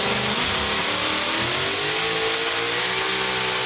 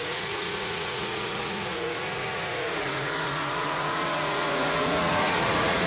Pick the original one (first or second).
first